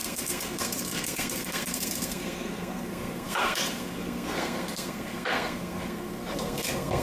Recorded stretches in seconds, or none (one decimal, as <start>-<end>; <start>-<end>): none